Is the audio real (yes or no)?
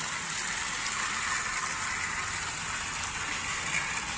yes